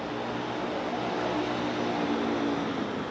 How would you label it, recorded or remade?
recorded